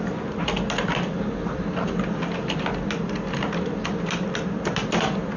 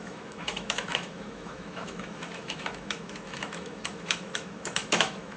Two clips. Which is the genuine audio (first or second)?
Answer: first